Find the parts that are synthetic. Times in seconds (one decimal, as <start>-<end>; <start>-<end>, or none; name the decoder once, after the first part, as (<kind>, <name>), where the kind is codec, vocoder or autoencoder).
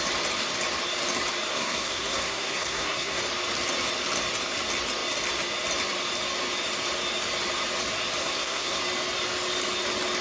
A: 1.5-3.2 (codec, SNAC); 8.2-8.8